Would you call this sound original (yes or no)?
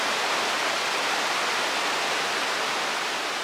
yes